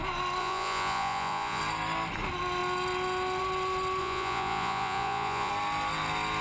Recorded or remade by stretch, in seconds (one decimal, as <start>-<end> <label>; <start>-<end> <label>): 0.0-0.4 recorded; 0.4-1.6 remade; 1.6-4.0 recorded; 4.0-5.5 remade; 5.5-6.4 recorded